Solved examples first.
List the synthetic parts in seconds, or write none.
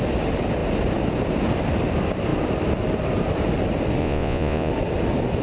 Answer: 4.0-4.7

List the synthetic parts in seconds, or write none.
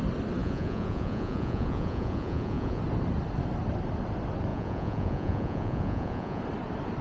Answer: 0.4-2.8; 4.5-6.4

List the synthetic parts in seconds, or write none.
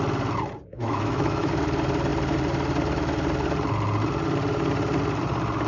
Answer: 0.7-1.5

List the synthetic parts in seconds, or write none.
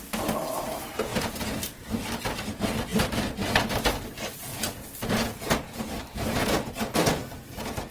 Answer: 1.1-1.6; 4.5-5.8; 6.4-7.2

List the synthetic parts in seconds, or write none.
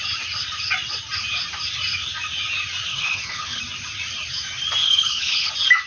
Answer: 2.9-3.6; 4.8-5.5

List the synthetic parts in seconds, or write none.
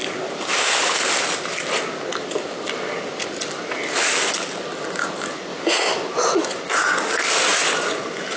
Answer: 5.5-6.7; 7.5-8.0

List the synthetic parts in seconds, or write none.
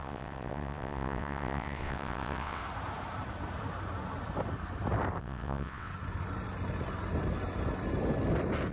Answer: 0.0-2.6; 5.2-5.9